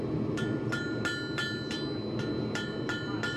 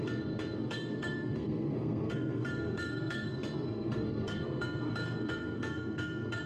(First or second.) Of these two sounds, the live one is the first